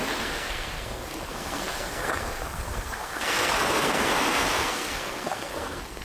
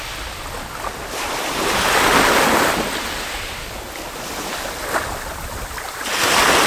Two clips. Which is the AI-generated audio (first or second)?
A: first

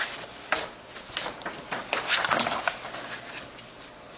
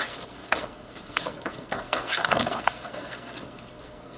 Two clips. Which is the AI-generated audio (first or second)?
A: second